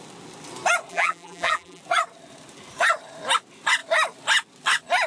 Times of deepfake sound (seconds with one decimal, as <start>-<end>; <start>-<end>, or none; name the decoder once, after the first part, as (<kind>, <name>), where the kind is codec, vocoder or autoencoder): 0.9-1.8 (vocoder, BigVGAN v2)